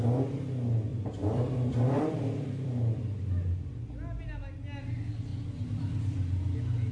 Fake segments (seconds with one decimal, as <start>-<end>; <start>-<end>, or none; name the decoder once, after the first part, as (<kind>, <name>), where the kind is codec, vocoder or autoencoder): 0.9-3.2 (vocoder, BigVGAN v2)